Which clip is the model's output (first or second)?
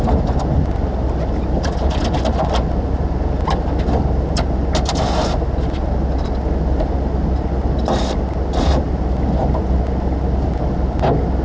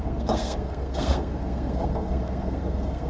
second